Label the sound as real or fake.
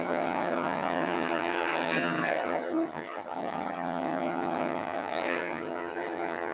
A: fake